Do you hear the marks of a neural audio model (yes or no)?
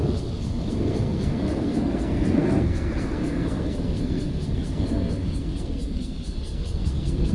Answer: yes